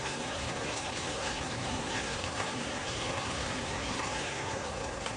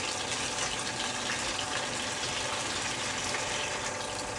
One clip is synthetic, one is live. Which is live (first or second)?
second